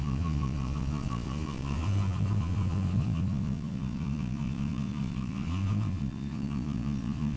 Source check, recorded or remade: remade